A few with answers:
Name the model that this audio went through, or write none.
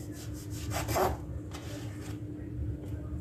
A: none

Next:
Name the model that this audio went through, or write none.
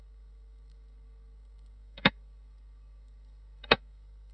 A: codec, SNAC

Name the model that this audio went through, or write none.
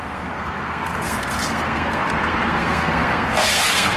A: codec, SNAC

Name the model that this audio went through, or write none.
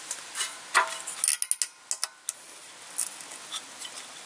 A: none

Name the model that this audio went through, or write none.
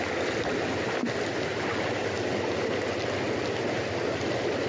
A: none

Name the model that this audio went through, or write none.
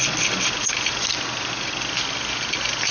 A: none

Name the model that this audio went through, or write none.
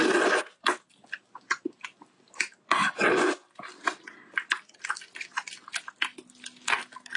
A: none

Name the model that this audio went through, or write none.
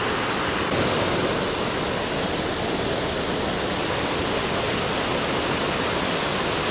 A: none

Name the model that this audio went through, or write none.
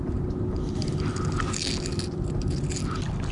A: none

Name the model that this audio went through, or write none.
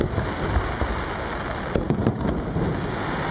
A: none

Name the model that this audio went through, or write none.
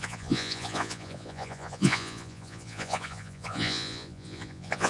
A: vocoder, Vocos